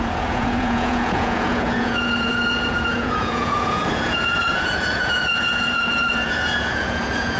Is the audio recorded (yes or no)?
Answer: no